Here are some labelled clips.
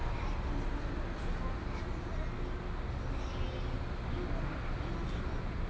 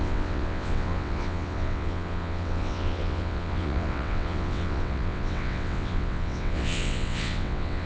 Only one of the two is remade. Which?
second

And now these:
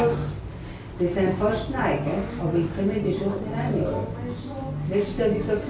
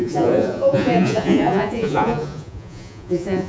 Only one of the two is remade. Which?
second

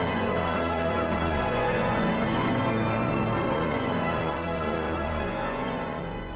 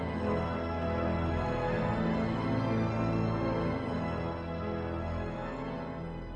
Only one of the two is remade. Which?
first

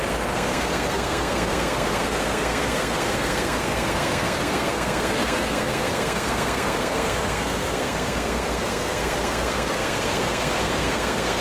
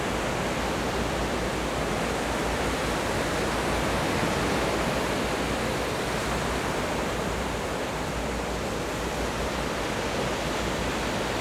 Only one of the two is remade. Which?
first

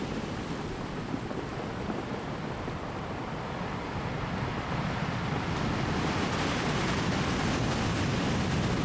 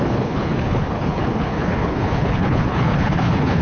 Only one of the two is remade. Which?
second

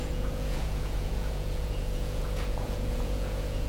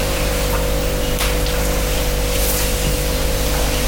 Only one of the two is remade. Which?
first